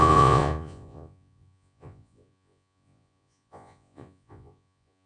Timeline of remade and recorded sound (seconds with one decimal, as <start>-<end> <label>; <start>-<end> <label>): 0.0-5.1 remade